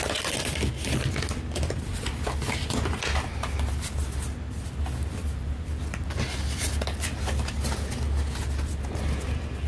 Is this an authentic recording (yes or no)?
yes